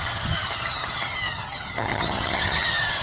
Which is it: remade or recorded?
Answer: remade